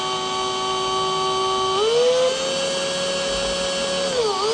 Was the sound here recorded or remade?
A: recorded